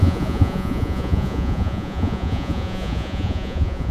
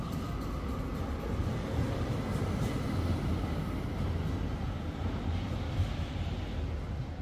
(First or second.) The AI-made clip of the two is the first